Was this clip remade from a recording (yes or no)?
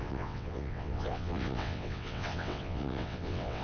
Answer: yes